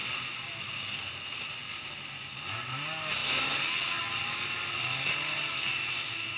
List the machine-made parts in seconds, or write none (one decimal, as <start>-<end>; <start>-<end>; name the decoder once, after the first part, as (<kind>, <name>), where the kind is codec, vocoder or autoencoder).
none